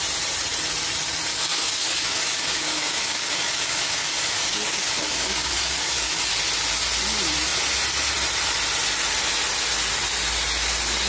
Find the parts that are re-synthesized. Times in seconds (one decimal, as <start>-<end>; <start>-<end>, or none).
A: 1.3-6.2